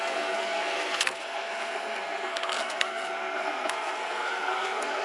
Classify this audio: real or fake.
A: fake